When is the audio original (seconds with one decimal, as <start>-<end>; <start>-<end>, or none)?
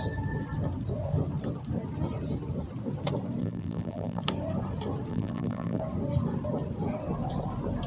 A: 0.0-3.4; 4.2-5.1; 5.8-7.9